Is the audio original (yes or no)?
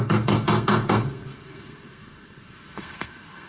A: no